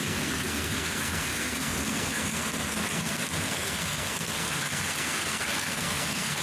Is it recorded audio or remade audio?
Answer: remade